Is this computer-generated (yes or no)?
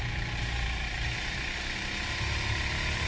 no